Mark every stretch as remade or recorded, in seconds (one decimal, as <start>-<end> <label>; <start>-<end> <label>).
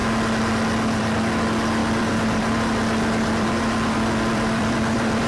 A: 0.0-1.8 recorded; 1.8-5.3 remade